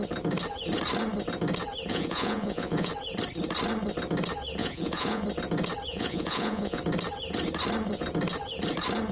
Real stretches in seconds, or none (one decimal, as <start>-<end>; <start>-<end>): 0.0-1.9; 2.9-4.6; 5.2-5.9; 6.8-9.1